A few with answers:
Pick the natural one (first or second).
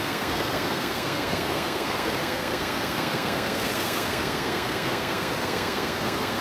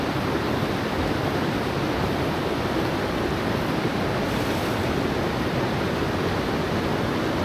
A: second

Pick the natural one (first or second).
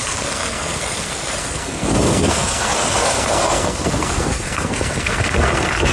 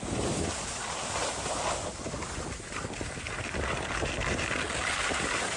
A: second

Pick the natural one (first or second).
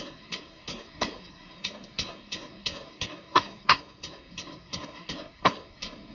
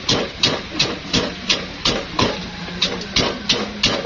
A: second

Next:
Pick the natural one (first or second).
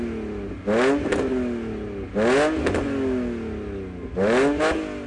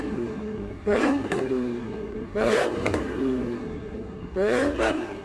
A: first